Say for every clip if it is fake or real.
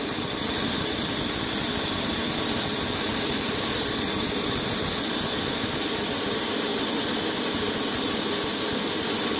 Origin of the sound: real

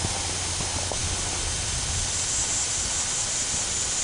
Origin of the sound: real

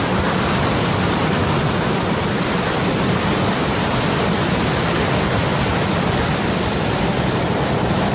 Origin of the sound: fake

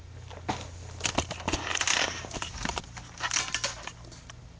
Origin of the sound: real